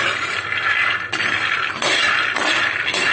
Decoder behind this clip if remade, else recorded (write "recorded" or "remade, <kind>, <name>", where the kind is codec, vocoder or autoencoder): recorded